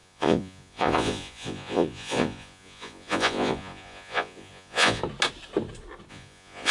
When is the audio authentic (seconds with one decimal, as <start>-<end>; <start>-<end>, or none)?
5.0-6.1